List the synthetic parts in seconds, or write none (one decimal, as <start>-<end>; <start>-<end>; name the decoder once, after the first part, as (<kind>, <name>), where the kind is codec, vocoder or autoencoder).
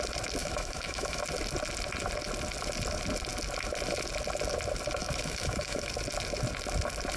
0.4-1.2 (autoencoder, DAC-VAE); 5.0-5.9